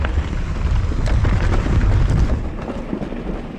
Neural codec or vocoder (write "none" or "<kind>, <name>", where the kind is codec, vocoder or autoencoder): none